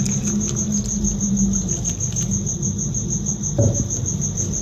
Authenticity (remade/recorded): remade